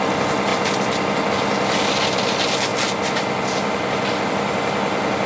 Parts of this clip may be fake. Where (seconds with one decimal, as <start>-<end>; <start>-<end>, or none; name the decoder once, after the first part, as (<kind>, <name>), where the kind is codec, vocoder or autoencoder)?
none